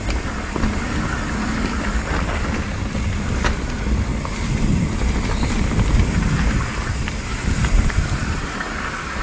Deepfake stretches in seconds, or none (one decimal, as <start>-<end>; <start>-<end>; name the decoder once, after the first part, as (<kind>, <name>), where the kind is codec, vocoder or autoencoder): none

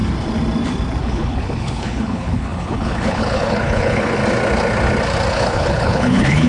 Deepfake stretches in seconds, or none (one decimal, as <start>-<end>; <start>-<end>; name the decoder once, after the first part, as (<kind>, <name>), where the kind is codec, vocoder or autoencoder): 1.0-4.2 (codec, HILCodec); 5.3-6.5

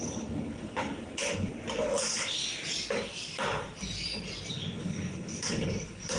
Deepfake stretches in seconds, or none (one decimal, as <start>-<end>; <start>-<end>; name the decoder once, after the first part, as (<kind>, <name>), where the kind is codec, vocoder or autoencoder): 0.0-1.5 (codec, HILCodec); 2.0-2.4; 4.5-6.2

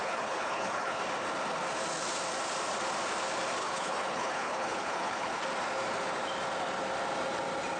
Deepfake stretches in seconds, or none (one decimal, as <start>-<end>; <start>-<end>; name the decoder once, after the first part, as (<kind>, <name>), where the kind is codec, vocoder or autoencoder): 0.0-1.0 (codec, HILCodec); 3.6-5.4